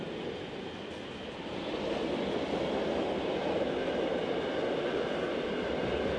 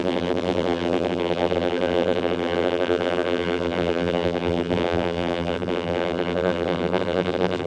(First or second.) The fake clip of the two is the second